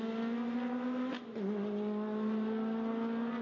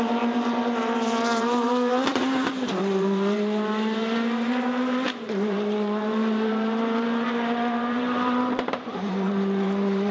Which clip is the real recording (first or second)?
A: first